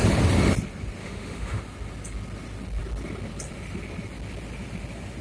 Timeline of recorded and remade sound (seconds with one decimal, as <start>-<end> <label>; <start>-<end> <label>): 0.0-1.0 recorded; 1.0-1.6 remade; 1.6-5.2 recorded